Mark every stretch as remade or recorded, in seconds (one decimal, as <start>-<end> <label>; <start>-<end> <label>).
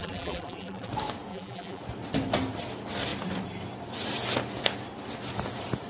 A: 0.0-0.9 remade; 0.9-1.3 recorded; 1.3-1.8 remade; 1.8-5.9 recorded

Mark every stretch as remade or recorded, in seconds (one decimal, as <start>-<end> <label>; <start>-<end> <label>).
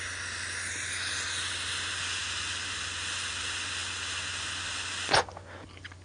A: 0.0-6.0 recorded